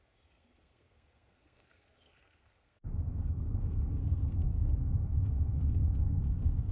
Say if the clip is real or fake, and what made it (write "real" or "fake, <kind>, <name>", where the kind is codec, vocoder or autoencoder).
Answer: fake, codec, SNAC